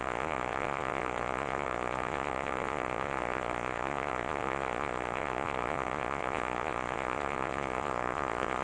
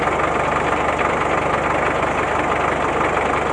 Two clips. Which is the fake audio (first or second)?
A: first